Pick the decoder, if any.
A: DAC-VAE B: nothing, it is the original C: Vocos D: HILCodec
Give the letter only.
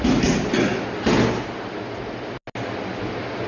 B